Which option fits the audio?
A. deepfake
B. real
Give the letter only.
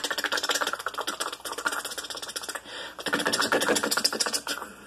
B